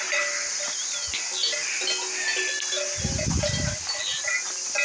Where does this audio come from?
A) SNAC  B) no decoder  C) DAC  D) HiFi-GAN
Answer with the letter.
B